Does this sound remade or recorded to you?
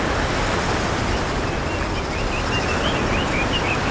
recorded